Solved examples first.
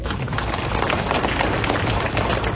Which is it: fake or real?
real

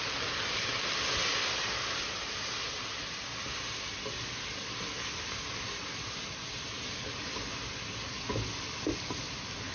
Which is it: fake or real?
real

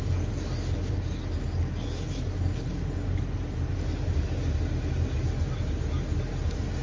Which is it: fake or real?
real